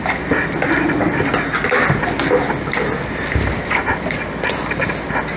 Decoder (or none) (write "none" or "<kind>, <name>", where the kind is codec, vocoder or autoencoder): none